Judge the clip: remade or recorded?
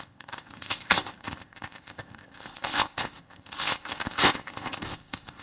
remade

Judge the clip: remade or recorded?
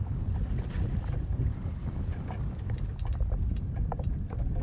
recorded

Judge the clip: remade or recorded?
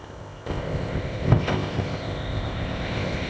remade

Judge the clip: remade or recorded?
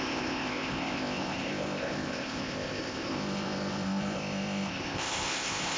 remade